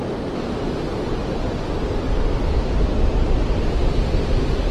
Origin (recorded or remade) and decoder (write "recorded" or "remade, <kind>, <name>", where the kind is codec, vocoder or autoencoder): recorded